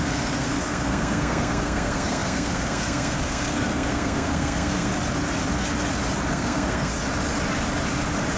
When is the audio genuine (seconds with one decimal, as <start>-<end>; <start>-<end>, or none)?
4.9-6.3; 6.9-8.4